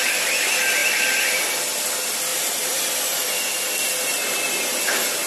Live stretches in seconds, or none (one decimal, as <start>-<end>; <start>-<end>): 0.0-0.8; 1.4-2.3; 2.8-5.3